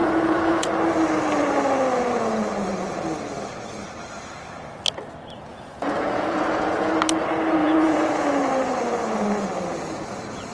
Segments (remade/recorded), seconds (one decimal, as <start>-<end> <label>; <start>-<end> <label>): 0.0-0.7 remade; 0.7-5.5 recorded; 5.5-6.9 remade; 6.9-7.6 recorded; 7.6-8.3 remade; 8.3-10.5 recorded